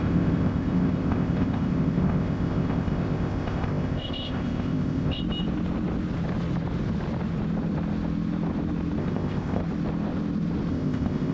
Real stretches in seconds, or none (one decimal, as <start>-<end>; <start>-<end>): 5.2-9.0; 9.6-10.7